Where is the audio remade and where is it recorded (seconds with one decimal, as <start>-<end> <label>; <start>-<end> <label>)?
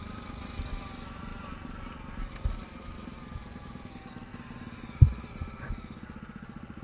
0.0-6.8 recorded